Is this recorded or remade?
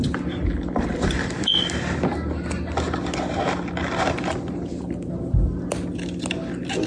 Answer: recorded